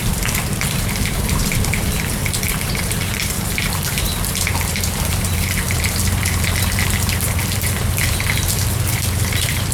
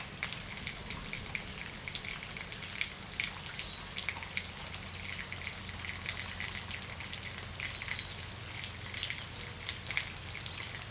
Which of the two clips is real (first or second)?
second